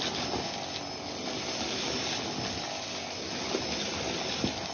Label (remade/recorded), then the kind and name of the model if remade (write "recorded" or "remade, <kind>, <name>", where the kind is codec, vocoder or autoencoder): recorded